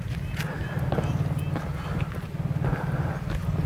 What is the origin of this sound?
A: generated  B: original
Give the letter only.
B